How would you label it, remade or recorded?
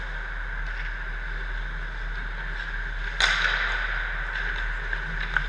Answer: recorded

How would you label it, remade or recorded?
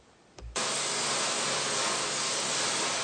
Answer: recorded